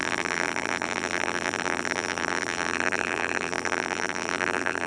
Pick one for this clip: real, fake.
fake